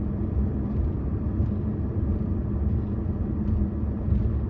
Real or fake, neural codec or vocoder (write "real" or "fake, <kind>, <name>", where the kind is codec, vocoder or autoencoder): real